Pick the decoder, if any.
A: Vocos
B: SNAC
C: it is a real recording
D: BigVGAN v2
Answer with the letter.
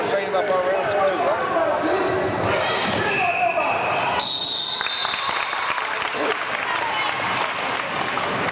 C